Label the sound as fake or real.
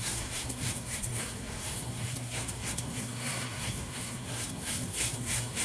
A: fake